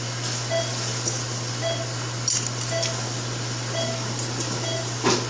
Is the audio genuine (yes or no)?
yes